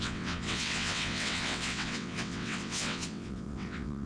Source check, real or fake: fake